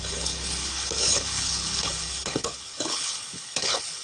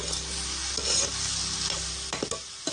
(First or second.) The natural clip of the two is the second